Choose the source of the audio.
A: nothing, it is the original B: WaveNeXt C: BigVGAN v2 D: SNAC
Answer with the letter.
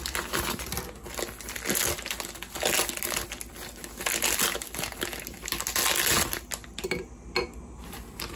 A